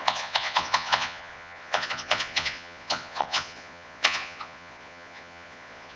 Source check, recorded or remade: remade